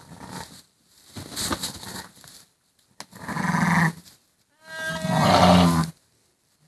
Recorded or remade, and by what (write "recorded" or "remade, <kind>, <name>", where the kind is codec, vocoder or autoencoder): recorded